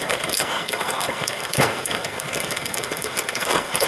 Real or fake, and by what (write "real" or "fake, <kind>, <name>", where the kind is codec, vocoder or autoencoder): fake, codec, SNAC